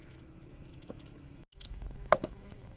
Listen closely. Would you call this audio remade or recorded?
remade